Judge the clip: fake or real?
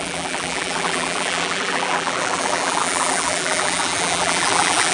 fake